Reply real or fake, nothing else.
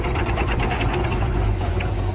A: fake